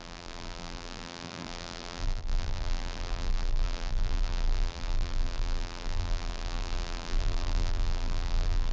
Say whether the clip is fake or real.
fake